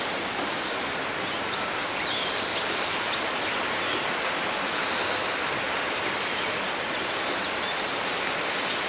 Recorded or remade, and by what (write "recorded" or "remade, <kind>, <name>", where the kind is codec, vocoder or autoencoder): recorded